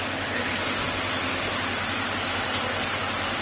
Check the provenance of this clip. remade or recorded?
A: recorded